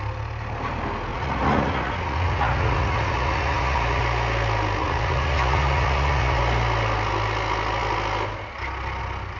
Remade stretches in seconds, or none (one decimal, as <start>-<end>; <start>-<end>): 1.1-4.0; 4.8-6.4